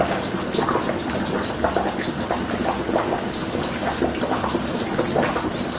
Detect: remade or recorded recorded